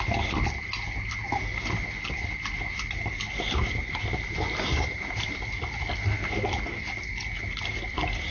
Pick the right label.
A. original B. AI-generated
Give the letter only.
A